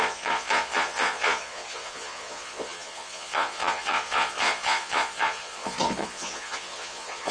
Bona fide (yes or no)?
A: no